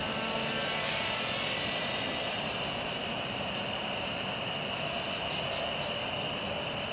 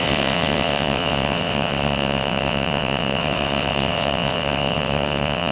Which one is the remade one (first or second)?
second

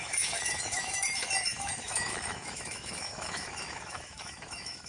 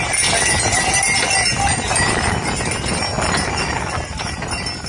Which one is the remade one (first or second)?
first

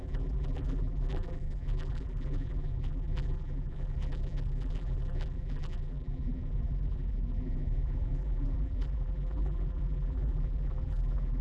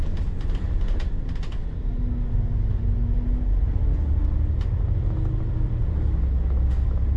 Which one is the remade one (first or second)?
first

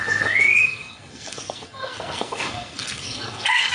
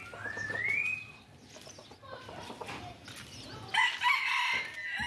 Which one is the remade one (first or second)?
first